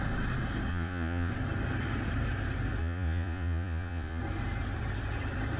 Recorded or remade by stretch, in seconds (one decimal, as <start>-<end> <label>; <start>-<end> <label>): 0.0-0.7 recorded; 0.7-1.3 remade; 1.3-2.8 recorded; 2.8-4.2 remade; 4.2-5.6 recorded